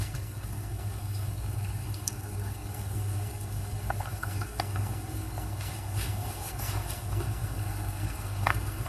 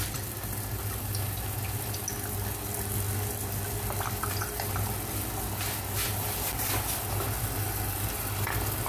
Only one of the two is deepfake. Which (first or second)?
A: first